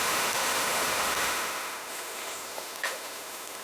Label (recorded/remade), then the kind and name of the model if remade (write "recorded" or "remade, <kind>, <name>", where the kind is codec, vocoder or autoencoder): remade, autoencoder, DAC-VAE